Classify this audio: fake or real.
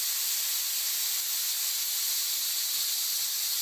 real